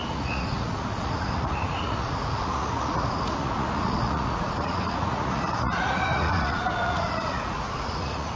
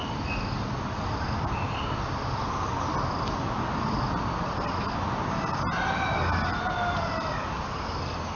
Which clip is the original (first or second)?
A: second